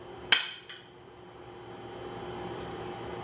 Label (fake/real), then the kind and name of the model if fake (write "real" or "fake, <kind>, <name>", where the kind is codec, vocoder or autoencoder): real